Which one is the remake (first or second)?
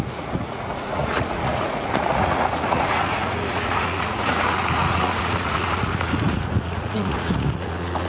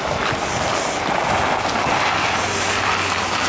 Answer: first